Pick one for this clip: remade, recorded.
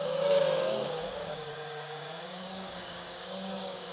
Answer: remade